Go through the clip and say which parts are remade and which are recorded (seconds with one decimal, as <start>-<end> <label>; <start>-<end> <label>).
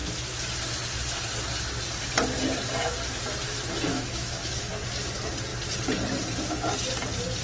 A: 0.0-0.6 remade; 0.6-3.9 recorded; 3.9-4.7 remade; 4.7-7.4 recorded